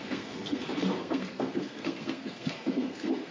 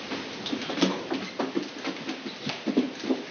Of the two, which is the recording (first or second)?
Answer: second